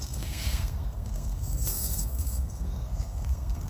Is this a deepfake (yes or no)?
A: yes